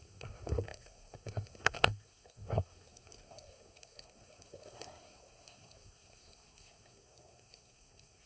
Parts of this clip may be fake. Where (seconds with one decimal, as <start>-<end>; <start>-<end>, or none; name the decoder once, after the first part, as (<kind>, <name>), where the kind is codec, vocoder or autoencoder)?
0.0-8.3 (codec, SNAC)